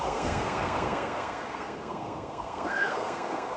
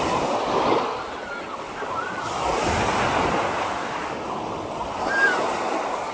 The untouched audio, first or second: second